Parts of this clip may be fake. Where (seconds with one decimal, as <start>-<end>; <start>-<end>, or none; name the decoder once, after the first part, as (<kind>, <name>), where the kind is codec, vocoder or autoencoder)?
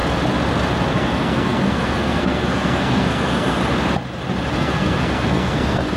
0.9-3.6 (codec, SNAC); 4.6-6.0